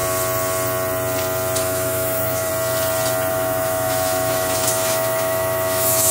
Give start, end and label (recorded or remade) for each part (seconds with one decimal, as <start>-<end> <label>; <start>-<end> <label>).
0.0-1.6 recorded; 1.6-2.5 remade; 2.5-3.3 recorded; 3.3-6.1 remade